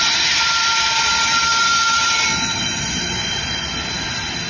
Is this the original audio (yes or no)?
yes